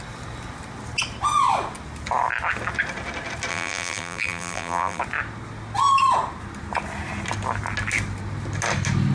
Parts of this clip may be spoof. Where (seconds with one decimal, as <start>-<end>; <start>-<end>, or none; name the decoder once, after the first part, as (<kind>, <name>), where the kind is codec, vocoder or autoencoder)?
3.5-5.0 (vocoder, BigVGAN v2)

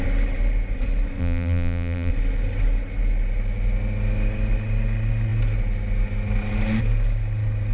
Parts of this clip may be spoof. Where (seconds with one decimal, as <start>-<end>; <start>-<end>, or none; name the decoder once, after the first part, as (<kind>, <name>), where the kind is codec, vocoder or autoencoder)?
1.2-2.1 (vocoder, BigVGAN v2)

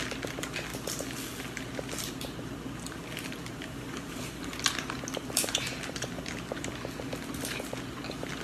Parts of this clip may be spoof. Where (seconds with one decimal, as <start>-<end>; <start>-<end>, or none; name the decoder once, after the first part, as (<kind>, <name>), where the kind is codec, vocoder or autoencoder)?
3.4-4.2 (vocoder, BigVGAN v2)

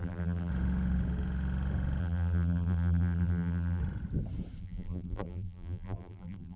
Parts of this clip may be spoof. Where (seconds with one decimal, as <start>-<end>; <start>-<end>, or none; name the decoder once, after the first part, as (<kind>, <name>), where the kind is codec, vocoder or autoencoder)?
0.0-0.5 (vocoder, BigVGAN v2); 2.0-3.8; 4.6-6.6

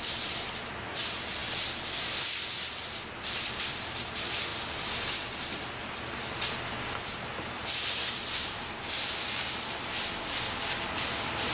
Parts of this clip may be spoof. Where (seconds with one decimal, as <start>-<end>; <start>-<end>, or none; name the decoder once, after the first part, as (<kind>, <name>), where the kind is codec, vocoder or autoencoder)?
0.0-1.4 (vocoder, BigVGAN v2); 2.0-4.5; 7.0-11.5

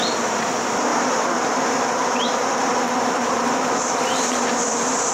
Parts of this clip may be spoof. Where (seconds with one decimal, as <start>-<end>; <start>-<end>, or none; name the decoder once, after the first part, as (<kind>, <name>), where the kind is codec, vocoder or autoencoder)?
0.9-1.6 (vocoder, BigVGAN v2); 2.0-3.3

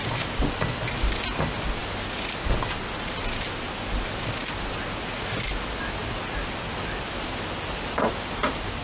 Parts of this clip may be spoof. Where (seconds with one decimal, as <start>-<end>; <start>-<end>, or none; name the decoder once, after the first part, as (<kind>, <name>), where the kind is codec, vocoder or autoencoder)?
6.0-8.1 (vocoder, BigVGAN v2)

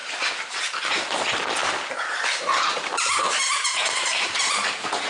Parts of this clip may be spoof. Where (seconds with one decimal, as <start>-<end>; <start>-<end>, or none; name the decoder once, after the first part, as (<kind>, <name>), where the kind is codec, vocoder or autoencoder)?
1.6-5.1 (vocoder, BigVGAN v2)